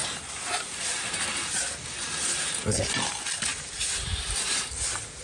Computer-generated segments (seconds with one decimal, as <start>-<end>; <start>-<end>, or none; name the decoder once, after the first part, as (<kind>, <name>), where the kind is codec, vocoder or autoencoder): 0.0-1.4 (vocoder, BigVGAN v2); 3.5-4.1